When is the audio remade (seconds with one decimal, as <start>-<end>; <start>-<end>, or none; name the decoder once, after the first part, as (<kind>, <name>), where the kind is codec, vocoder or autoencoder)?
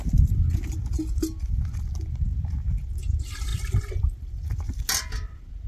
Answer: none